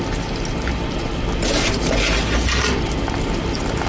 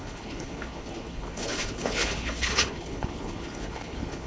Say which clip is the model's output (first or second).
second